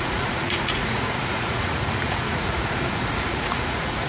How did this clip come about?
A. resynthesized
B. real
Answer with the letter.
A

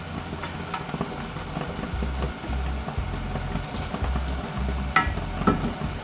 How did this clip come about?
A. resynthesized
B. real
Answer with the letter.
B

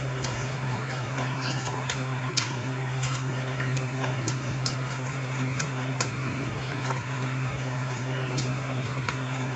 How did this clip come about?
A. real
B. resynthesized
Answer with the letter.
B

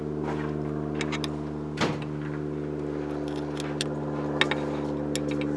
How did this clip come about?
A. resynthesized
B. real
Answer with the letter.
B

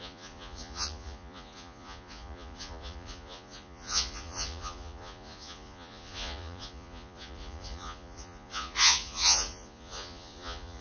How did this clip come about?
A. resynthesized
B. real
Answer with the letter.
A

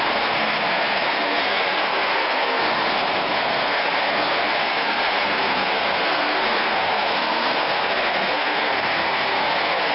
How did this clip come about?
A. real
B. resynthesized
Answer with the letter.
B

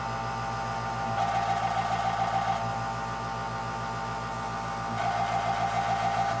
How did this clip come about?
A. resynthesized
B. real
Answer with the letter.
B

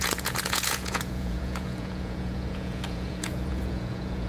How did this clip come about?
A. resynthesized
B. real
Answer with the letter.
A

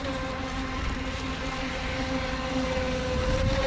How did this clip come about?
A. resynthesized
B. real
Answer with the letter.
B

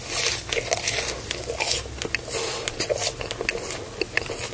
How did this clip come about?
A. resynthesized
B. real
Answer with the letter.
B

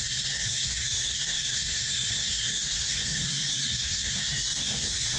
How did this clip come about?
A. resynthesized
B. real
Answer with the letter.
A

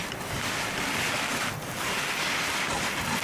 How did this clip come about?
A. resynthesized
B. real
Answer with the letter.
B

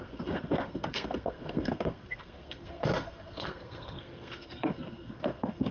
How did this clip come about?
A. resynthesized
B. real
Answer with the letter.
A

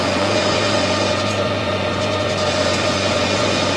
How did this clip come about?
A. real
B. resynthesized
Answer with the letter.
B